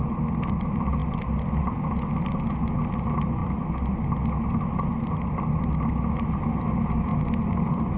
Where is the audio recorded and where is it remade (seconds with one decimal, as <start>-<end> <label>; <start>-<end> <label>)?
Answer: 0.0-8.0 recorded